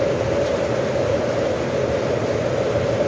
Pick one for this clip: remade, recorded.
recorded